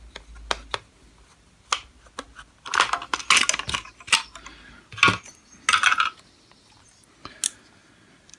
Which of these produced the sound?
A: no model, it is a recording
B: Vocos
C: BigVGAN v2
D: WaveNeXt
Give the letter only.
A